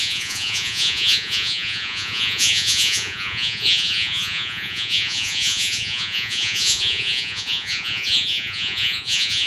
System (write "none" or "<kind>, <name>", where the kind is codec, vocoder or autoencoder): vocoder, Vocos